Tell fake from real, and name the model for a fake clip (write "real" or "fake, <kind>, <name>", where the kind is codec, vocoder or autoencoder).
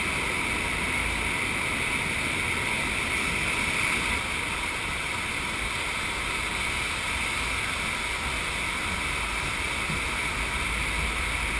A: real